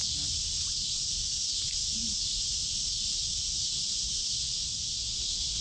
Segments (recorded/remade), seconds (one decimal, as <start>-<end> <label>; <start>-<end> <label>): 0.0-5.6 recorded